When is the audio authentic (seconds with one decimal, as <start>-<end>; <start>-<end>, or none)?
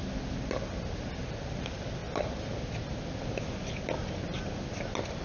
0.0-5.2